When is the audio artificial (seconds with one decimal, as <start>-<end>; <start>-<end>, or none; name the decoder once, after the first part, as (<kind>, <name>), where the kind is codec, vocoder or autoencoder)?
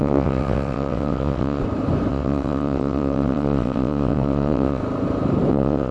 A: 0.0-1.6 (vocoder, WaveNeXt); 2.1-4.8; 5.5-5.9